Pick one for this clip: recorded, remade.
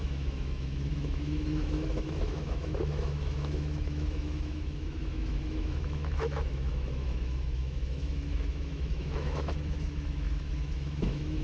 remade